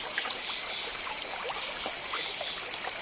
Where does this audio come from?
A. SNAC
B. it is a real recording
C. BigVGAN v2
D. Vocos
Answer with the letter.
B